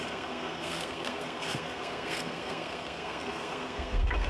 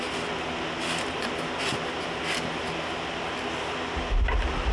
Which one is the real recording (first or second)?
second